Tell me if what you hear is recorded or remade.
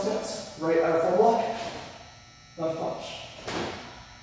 recorded